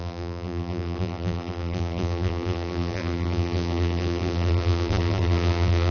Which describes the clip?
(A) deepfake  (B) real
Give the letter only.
A